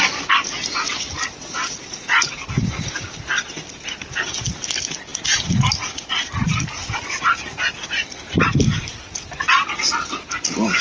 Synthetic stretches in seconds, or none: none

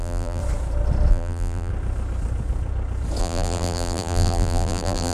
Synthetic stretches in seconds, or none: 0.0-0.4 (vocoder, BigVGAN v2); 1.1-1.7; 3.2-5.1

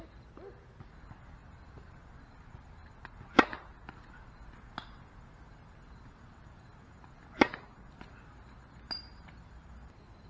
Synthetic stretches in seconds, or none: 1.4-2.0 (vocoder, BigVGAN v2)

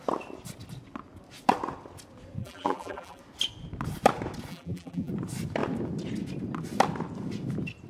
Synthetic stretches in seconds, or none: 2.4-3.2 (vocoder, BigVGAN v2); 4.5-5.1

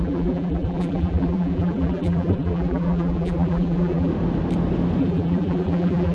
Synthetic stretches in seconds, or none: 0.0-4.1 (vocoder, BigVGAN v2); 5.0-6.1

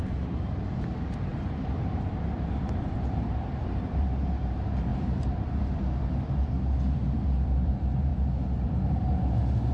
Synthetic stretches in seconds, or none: 1.3-4.0 (vocoder, BigVGAN v2); 4.9-7.7; 8.1-8.7

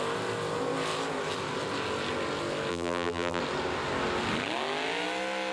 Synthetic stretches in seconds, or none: 2.7-3.4 (vocoder, BigVGAN v2)